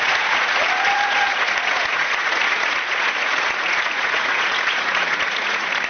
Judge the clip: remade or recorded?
remade